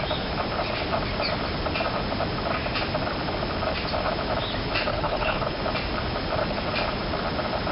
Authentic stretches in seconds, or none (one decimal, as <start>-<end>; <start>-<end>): 0.0-4.9; 5.6-7.7